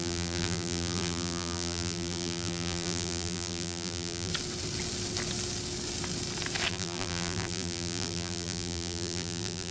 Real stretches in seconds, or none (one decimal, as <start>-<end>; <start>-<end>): 4.3-6.7